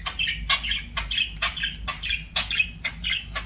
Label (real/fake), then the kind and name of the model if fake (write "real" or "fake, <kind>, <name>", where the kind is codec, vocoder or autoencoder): real